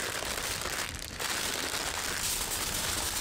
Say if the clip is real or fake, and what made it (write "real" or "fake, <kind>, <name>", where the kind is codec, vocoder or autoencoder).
real